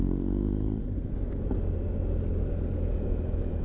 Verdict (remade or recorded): recorded